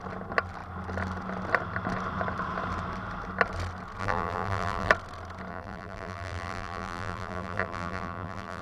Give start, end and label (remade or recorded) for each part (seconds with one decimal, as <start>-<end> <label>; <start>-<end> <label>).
0.0-4.0 recorded; 4.0-4.9 remade; 4.9-5.5 recorded; 5.5-8.6 remade